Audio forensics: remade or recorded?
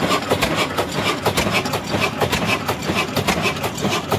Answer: recorded